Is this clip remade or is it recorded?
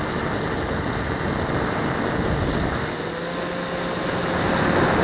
recorded